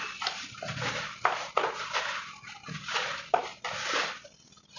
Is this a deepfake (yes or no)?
yes